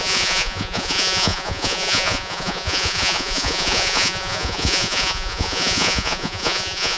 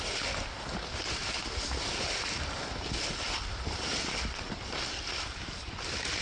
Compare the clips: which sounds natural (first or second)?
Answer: second